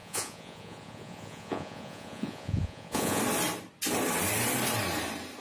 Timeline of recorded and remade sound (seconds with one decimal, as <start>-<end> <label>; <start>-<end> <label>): 0.0-3.2 remade; 3.2-5.4 recorded